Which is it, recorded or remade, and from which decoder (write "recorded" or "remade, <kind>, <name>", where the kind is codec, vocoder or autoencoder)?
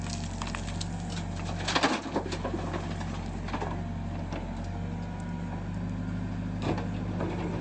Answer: recorded